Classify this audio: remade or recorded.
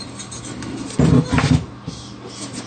recorded